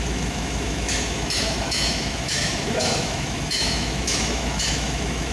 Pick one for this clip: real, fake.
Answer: fake